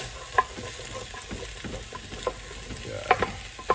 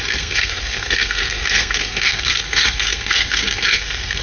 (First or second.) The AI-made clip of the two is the second